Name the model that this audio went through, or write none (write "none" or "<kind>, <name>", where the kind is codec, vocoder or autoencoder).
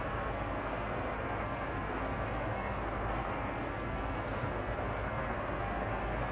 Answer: codec, SNAC